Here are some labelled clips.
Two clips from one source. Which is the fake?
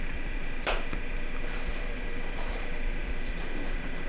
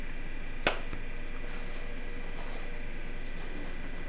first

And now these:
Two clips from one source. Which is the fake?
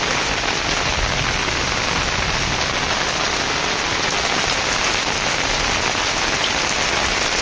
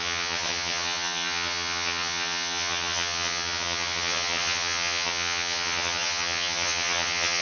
second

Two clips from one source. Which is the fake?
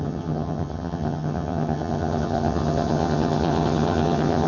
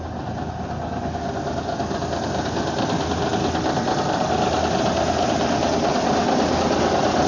first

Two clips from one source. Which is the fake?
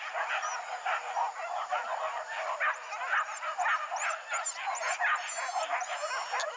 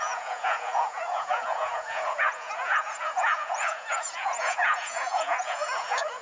second